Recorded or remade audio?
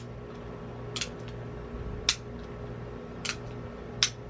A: recorded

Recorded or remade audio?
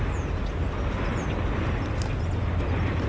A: recorded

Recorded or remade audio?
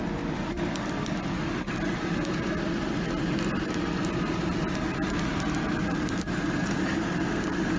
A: remade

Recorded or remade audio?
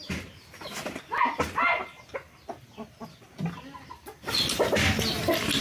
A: recorded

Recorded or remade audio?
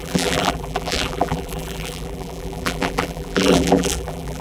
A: remade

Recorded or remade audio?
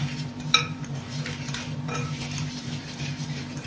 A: remade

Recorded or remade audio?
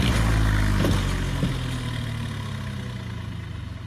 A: recorded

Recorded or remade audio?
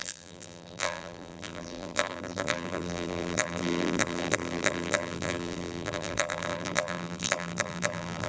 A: remade